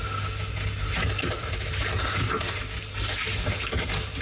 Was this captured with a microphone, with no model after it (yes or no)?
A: yes